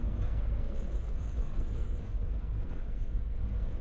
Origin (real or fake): fake